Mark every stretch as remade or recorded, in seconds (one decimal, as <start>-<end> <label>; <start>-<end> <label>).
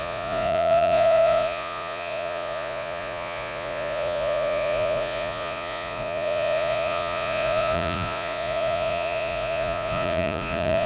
0.0-10.9 remade